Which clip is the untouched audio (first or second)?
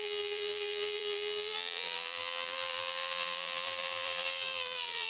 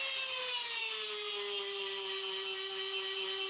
second